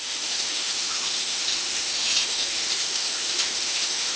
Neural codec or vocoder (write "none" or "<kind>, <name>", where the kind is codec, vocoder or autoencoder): autoencoder, DAC-VAE